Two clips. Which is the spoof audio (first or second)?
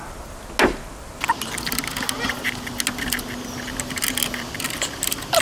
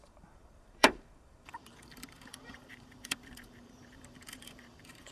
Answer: second